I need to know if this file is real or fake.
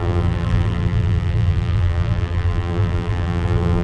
fake